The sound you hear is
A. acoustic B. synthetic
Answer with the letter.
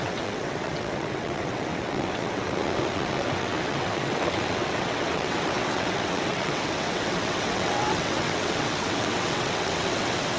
B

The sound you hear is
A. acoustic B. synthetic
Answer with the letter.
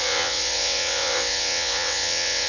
B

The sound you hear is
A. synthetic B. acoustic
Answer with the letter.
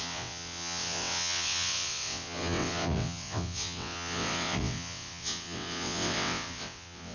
A